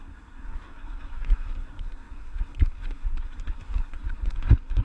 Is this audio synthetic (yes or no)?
yes